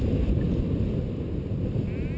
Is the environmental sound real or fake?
real